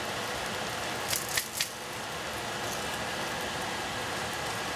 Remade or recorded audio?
recorded